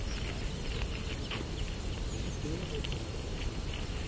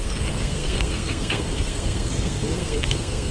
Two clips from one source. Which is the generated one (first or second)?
second